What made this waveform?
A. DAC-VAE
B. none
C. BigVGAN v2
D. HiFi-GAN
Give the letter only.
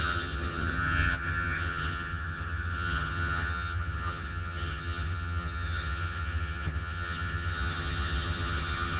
D